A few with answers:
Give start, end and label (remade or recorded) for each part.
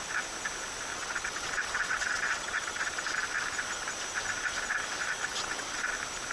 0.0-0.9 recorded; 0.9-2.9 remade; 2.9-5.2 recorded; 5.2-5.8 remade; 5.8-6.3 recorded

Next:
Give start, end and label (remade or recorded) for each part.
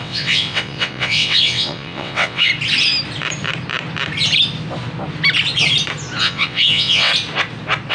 0.0-2.5 remade; 2.5-6.2 recorded; 6.2-7.1 remade; 7.1-7.9 recorded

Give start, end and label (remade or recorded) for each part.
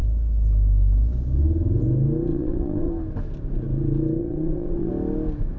0.0-2.3 recorded; 2.3-2.9 remade; 2.9-4.2 recorded; 4.2-4.9 remade; 4.9-5.6 recorded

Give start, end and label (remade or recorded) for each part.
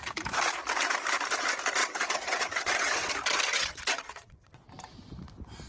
0.0-1.8 recorded; 1.8-3.1 remade; 3.1-3.5 recorded; 3.5-4.7 remade; 4.7-5.7 recorded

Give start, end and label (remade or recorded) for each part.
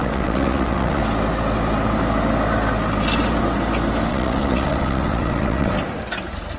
0.0-1.0 remade; 1.0-4.1 recorded; 4.1-5.7 remade; 5.7-6.6 recorded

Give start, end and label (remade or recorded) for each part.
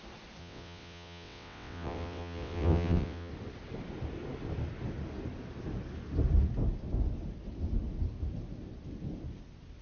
0.0-0.4 recorded; 0.4-3.3 remade; 3.3-9.8 recorded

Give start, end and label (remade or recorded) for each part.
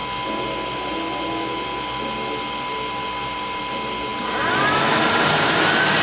0.0-6.0 recorded